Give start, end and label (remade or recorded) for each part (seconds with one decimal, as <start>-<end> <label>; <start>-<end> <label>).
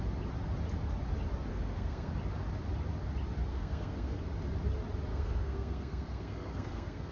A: 0.0-1.5 recorded; 1.5-2.1 remade; 2.1-3.5 recorded; 3.5-4.2 remade; 4.2-5.1 recorded; 5.1-7.1 remade